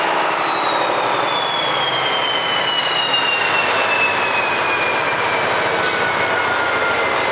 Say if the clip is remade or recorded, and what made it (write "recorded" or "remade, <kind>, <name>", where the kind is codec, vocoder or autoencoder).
recorded